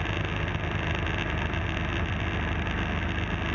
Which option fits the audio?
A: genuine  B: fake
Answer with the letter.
A